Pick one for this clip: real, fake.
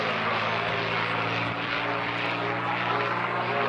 real